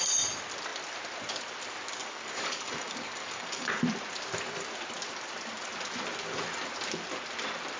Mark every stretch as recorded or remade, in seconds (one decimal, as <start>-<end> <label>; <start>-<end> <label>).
0.0-2.0 recorded; 2.0-3.8 remade; 3.8-7.8 recorded